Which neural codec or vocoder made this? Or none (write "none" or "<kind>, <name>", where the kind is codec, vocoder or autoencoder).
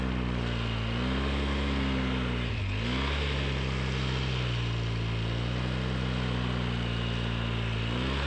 none